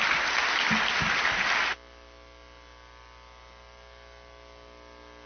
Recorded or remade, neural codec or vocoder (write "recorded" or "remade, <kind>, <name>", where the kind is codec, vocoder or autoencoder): recorded